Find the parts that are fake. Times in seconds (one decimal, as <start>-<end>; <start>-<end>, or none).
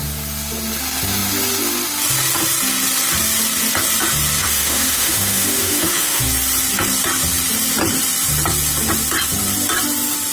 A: 4.4-6.2